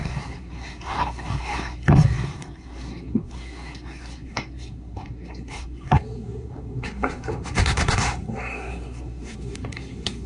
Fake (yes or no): yes